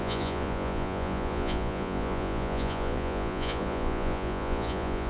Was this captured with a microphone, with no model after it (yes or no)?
no